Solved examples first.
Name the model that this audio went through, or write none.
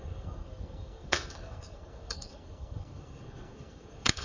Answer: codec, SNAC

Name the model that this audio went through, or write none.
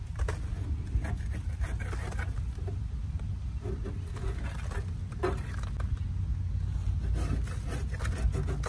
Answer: none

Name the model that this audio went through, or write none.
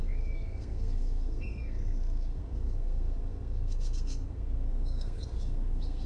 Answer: codec, SNAC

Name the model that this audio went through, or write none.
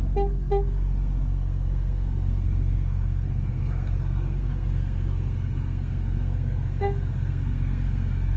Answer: codec, SNAC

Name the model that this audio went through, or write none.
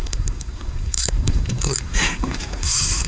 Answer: codec, SNAC